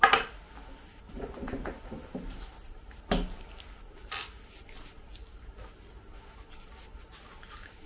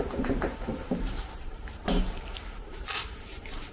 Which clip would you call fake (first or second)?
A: second